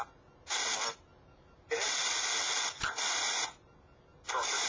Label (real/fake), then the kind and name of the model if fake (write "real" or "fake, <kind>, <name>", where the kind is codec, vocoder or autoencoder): real